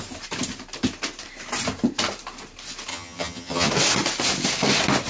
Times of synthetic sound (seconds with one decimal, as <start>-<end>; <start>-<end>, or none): 2.9-3.7